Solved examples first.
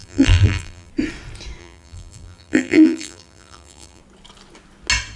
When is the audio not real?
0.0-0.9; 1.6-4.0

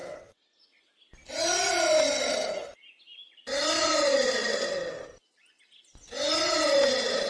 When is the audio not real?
0.0-0.6

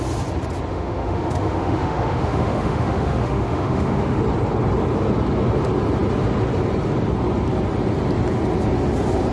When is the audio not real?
0.7-4.2

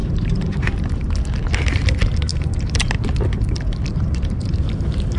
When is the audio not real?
0.0-0.9; 2.3-2.9; 3.9-4.6